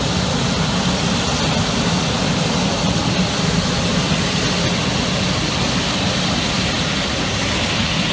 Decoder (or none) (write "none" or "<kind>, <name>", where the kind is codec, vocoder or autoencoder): none